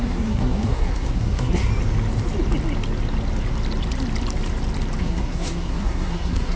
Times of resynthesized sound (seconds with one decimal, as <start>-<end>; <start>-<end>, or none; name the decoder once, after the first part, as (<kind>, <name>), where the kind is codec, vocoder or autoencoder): 0.0-1.7 (codec, SNAC); 5.0-6.6